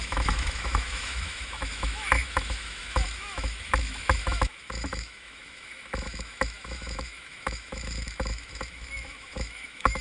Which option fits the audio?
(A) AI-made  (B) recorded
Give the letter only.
A